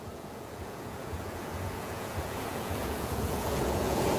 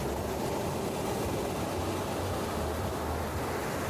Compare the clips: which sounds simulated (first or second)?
first